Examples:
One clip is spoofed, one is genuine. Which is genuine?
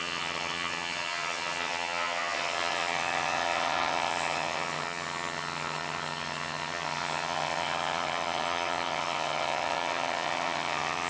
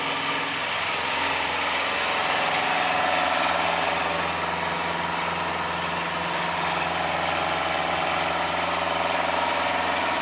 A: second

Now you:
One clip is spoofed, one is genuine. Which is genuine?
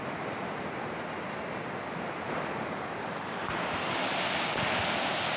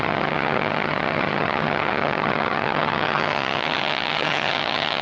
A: first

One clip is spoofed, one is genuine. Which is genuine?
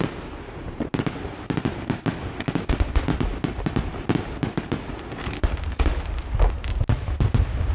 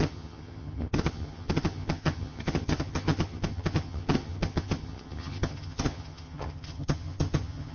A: first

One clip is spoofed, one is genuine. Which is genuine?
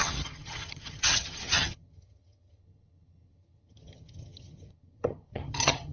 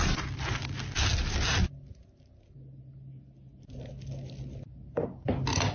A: second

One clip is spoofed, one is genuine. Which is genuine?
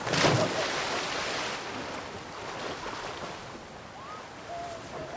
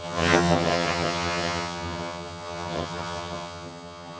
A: first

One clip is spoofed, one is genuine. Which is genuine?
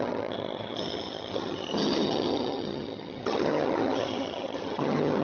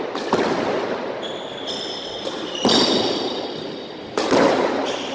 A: second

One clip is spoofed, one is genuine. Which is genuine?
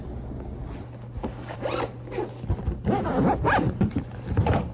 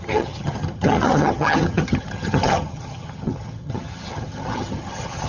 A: first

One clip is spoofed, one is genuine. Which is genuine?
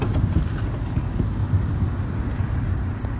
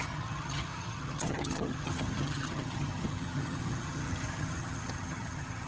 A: first